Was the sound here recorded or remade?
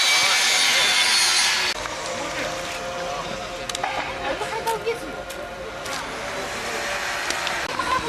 recorded